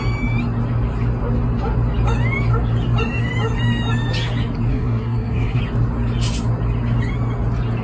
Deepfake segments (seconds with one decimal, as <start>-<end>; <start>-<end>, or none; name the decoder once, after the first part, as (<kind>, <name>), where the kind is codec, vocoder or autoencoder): 4.7-5.6 (codec, SNAC)